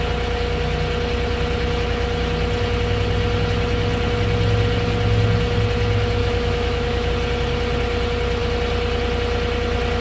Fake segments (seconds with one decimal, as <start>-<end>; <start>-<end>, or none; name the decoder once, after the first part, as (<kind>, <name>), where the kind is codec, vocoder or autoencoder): 6.2-7.1 (autoencoder, DAC-VAE)